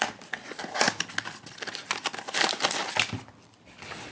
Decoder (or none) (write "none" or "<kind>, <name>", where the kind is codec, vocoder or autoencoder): none